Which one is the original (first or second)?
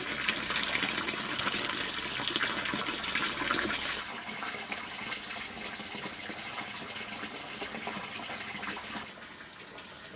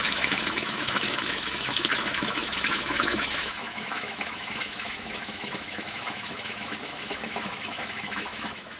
first